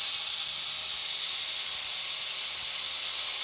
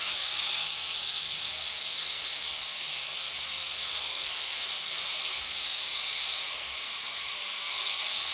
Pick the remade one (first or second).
second